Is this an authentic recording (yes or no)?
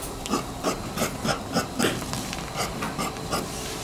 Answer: yes